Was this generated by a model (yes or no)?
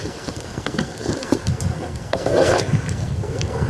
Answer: yes